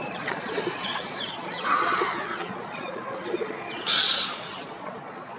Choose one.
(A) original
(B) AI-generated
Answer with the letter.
B